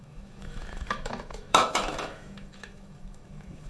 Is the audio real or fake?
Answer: fake